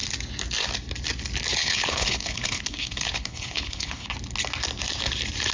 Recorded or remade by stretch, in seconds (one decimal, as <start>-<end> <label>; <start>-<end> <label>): 0.0-1.6 recorded; 1.6-4.1 remade; 4.1-5.5 recorded